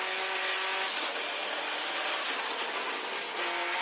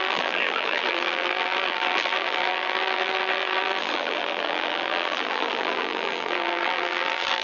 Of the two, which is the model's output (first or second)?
second